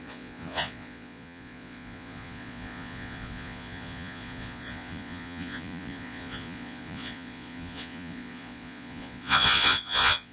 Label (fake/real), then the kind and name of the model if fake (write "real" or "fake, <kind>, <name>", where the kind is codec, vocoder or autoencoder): fake, vocoder, Vocos